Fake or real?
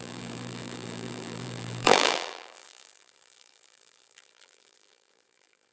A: fake